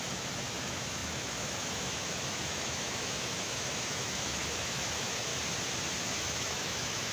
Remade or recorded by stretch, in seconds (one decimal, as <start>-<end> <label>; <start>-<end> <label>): 0.0-5.3 remade; 5.3-6.0 recorded; 6.0-7.1 remade